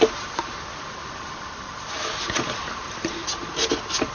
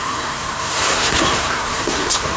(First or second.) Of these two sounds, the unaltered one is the first